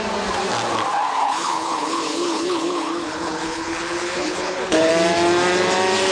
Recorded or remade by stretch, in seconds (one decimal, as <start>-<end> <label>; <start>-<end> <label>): 0.0-1.2 recorded; 1.2-4.9 remade; 4.9-6.1 recorded